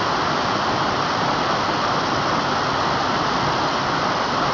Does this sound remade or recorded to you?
recorded